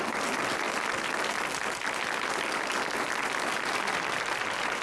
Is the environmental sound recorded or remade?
recorded